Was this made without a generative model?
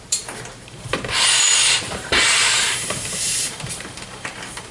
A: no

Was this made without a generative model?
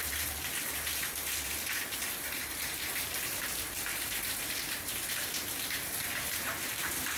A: no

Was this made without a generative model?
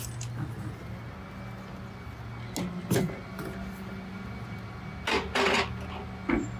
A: yes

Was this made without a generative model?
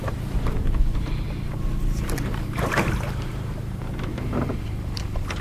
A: no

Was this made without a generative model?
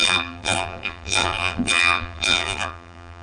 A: no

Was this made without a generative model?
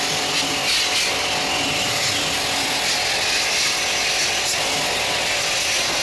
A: yes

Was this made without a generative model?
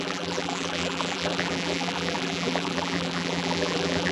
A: no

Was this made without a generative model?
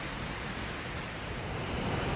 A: no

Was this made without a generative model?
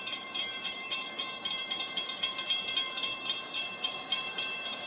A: no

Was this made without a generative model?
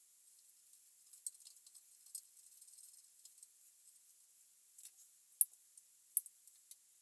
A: yes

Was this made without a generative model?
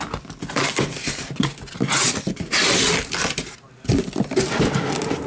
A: yes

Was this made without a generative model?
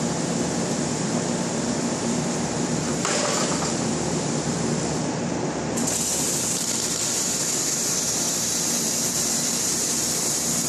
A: no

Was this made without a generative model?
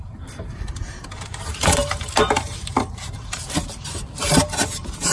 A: no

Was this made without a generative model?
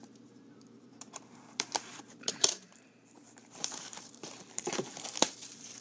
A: no